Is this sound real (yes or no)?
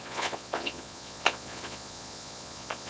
no